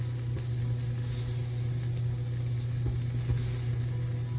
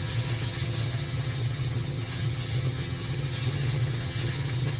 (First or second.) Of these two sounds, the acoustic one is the first